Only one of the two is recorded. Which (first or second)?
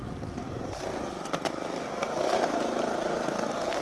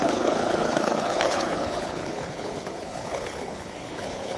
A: first